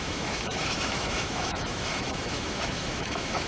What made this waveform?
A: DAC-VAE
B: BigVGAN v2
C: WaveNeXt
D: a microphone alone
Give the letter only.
A